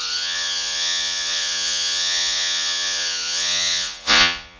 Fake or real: fake